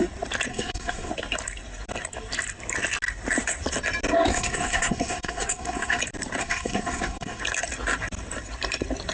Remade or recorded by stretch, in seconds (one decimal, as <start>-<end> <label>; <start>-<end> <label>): 0.0-0.5 recorded; 0.5-1.1 remade; 1.1-4.3 recorded; 4.3-6.0 remade; 6.0-6.4 recorded; 6.4-7.4 remade; 7.4-9.1 recorded